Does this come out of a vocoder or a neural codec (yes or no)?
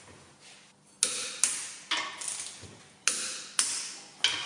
no